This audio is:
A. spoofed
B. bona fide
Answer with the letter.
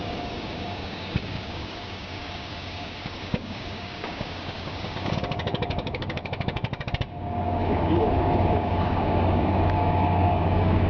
A